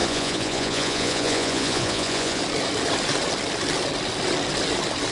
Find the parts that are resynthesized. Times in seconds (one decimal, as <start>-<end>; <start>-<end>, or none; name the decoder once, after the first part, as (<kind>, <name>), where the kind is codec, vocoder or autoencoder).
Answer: 0.0-2.4 (vocoder, Vocos)